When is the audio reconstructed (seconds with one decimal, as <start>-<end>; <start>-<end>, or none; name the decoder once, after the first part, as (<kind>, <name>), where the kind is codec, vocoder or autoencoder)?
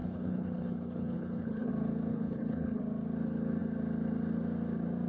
0.0-1.7 (codec, HILCodec); 2.1-2.8